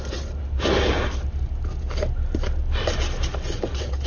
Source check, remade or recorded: recorded